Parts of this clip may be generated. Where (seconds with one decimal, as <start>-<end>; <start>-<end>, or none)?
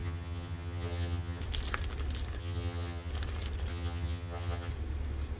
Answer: 0.0-1.4; 2.4-3.1; 3.7-4.7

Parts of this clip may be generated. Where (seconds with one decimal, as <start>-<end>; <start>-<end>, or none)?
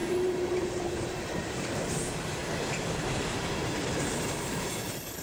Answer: 0.0-2.4; 3.1-5.2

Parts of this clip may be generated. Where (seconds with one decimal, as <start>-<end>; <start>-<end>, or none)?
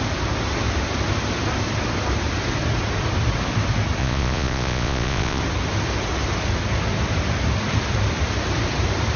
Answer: 4.0-5.4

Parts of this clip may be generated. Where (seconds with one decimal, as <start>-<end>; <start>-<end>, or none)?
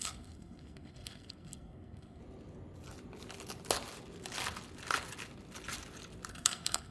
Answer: 0.0-2.2; 6.3-6.9